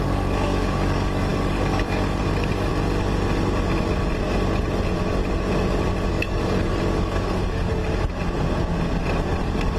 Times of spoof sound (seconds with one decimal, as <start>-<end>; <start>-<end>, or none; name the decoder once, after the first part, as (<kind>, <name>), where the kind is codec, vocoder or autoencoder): 0.0-2.7 (codec, DAC); 6.1-7.8; 9.4-9.8